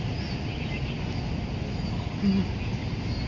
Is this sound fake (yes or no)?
no